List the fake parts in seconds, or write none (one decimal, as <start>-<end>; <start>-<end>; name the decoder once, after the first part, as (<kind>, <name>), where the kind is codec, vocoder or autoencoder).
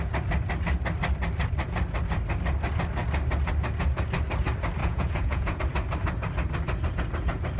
4.8-5.6 (vocoder, Vocos)